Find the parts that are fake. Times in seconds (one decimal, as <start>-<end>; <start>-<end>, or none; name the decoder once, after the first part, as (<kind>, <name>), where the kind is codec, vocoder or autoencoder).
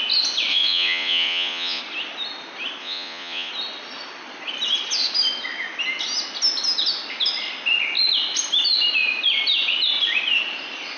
0.5-1.8 (vocoder, Vocos); 2.8-3.5